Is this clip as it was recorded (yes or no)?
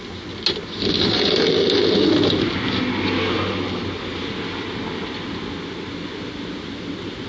yes